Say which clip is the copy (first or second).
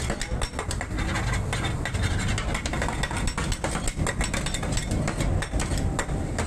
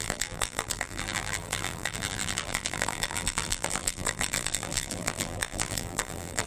second